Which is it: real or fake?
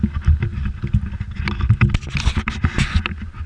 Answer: real